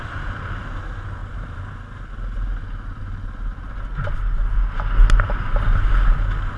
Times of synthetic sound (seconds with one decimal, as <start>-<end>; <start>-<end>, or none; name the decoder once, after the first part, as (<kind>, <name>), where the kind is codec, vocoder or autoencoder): none